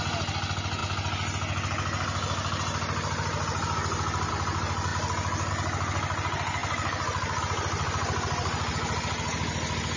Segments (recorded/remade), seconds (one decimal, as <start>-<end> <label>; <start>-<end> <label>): 0.0-10.0 recorded